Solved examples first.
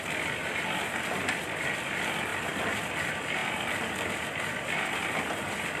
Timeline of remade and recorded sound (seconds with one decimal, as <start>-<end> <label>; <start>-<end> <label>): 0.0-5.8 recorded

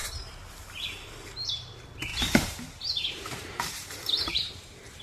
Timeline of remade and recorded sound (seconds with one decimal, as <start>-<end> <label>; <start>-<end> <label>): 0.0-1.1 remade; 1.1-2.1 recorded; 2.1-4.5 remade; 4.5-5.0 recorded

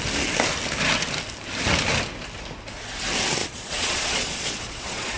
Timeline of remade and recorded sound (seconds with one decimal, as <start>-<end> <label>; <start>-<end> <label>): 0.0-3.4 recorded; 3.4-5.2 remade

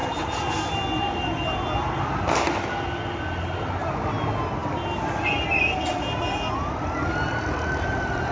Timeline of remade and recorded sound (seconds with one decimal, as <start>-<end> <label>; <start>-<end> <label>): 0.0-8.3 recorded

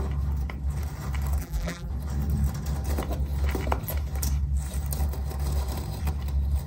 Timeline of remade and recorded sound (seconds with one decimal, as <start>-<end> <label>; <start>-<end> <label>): 0.0-1.4 recorded; 1.4-1.9 remade; 1.9-6.7 recorded

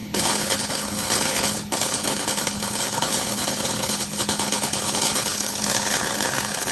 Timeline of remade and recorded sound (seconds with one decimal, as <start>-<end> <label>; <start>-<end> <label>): 0.0-6.7 remade